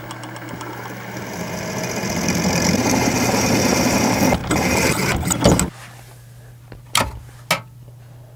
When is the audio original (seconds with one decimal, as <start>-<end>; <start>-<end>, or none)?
0.0-8.4